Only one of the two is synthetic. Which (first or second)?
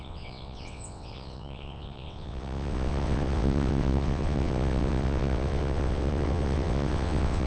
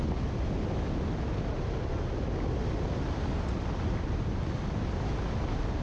first